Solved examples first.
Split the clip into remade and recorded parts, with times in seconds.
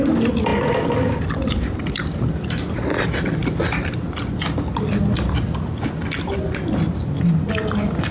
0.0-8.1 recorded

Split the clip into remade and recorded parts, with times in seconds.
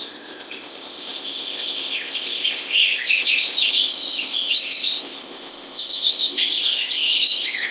0.0-7.7 remade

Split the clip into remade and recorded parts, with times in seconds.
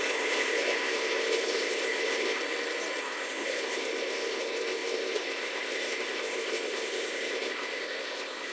0.0-2.4 remade; 2.4-3.0 recorded; 3.0-8.5 remade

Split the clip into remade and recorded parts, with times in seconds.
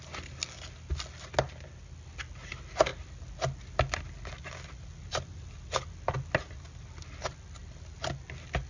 0.0-8.7 recorded